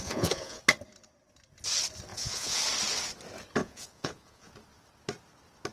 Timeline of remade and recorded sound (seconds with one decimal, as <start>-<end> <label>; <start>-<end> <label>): 0.0-0.6 remade; 0.6-2.1 recorded; 2.1-2.6 remade; 2.6-3.6 recorded; 3.6-4.5 remade; 4.5-5.7 recorded